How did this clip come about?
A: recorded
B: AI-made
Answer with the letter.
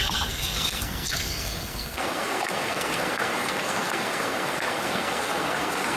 B